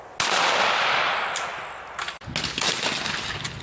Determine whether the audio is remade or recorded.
recorded